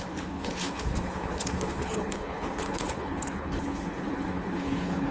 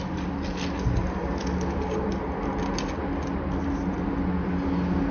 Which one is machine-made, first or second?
first